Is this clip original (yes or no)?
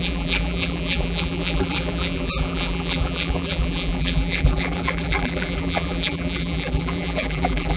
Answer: no